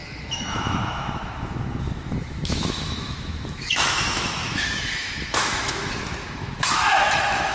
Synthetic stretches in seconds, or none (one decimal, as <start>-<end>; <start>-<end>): 0.0-7.5